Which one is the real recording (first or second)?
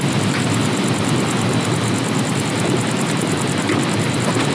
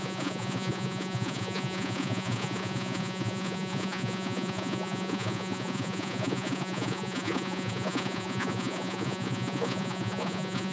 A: first